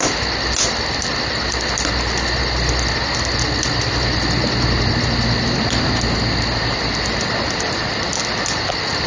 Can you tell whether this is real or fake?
real